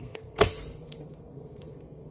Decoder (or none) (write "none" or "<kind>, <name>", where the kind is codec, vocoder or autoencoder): codec, SNAC